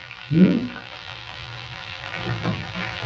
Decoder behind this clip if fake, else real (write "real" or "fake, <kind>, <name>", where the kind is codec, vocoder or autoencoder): fake, vocoder, BigVGAN v2